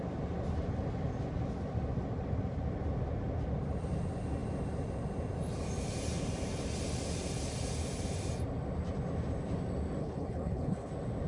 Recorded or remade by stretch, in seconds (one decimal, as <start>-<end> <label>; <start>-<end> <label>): 0.0-10.0 recorded; 10.0-10.9 remade; 10.9-11.3 recorded